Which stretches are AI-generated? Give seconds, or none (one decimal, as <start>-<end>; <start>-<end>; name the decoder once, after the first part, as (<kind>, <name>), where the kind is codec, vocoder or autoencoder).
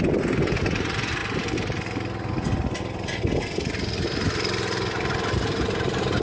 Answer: none